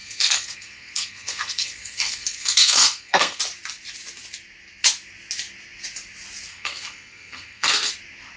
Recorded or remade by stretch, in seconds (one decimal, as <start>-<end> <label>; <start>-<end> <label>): 0.0-3.4 remade; 3.4-6.5 recorded; 6.5-7.9 remade; 7.9-8.4 recorded